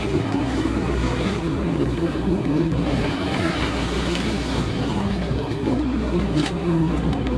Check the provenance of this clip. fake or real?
fake